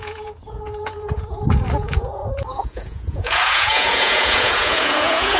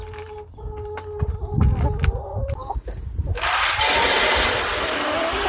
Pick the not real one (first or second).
first